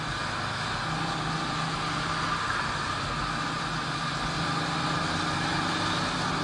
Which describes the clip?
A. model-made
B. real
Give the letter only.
B